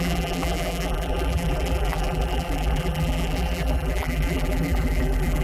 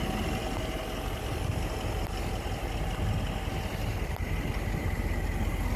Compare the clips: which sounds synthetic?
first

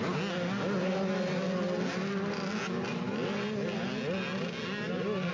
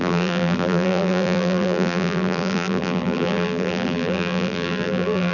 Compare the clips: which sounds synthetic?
second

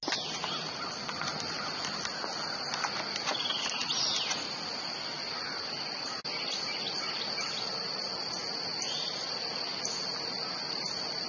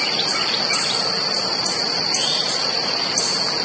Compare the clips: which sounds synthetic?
second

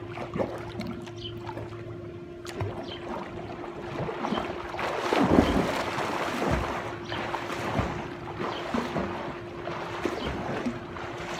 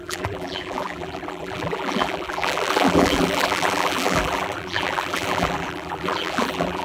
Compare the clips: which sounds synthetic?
second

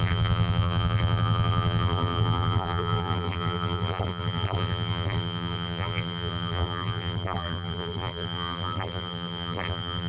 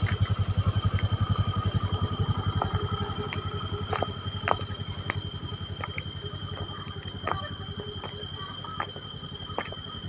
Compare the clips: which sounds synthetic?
first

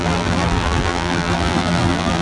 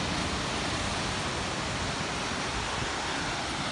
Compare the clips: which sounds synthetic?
first